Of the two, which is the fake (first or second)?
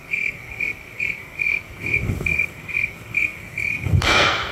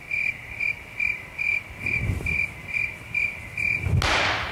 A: first